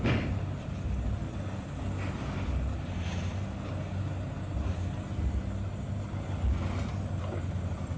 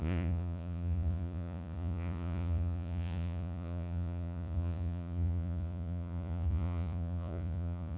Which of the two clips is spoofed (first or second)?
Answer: second